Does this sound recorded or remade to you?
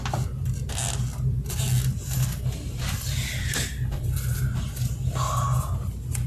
recorded